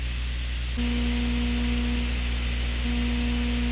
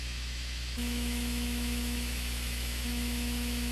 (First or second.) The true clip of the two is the first